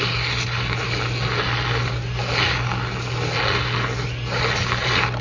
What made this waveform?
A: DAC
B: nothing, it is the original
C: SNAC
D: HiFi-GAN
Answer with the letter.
B